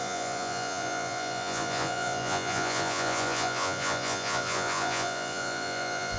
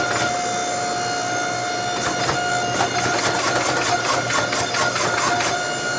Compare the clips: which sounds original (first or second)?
second